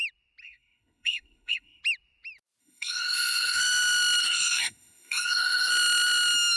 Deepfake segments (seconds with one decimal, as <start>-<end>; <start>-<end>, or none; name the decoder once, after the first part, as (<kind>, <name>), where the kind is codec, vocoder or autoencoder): 0.4-1.8 (codec, SNAC); 2.6-3.6; 4.2-5.7